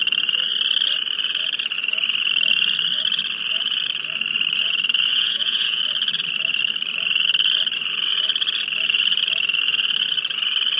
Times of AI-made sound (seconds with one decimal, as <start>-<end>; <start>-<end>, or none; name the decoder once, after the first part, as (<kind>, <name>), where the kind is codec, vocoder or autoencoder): 5.1-5.8 (vocoder, Vocos)